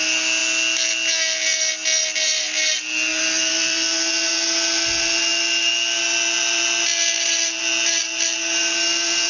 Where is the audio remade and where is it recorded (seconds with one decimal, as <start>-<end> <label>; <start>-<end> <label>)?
0.0-9.3 recorded